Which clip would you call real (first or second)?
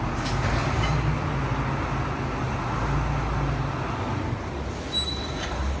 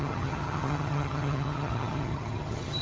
first